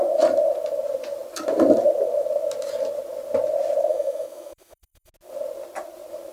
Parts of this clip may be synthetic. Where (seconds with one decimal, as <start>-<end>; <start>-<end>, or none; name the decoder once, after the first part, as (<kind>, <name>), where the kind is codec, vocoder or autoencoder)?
3.9-5.1 (autoencoder, DAC-VAE)